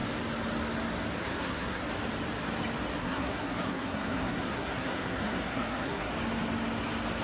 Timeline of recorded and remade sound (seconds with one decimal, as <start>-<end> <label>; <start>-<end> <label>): 0.0-1.2 recorded; 1.2-1.8 remade; 1.8-3.0 recorded; 3.0-6.1 remade; 6.1-7.2 recorded